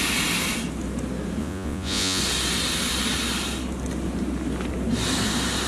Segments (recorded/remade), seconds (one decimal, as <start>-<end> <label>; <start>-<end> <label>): 0.0-1.4 recorded; 1.4-2.2 remade; 2.2-5.7 recorded